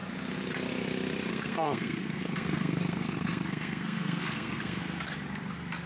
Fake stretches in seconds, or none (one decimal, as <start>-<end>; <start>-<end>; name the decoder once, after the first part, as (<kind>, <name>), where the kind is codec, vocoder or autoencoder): 1.3-4.8 (codec, SNAC)